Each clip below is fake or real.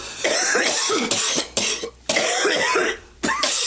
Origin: fake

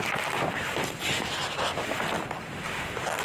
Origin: real